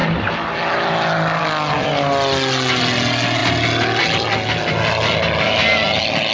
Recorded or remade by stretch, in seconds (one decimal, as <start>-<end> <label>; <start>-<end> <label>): 0.0-6.3 recorded